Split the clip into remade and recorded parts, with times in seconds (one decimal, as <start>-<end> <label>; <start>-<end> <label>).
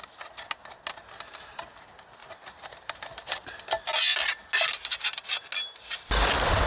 0.0-2.2 recorded; 2.2-3.5 remade; 3.5-6.7 recorded